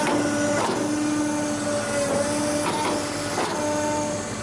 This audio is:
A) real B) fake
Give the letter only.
A